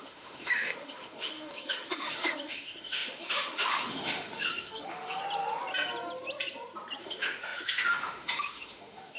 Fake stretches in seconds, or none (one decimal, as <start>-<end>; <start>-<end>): 0.0-5.2; 7.0-9.2